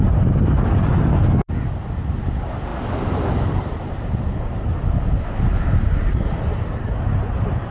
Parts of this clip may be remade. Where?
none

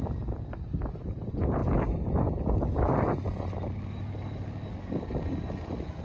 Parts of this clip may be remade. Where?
none